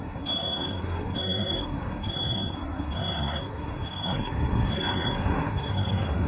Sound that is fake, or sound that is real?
fake